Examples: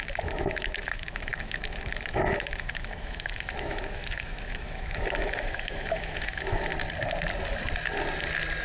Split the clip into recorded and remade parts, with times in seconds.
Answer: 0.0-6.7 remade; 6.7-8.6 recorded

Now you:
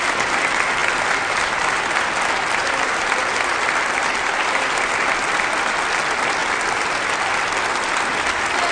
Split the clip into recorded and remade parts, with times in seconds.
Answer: 0.0-8.7 recorded

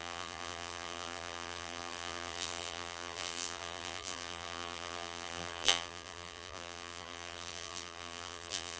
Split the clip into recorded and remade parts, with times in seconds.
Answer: 0.0-8.8 remade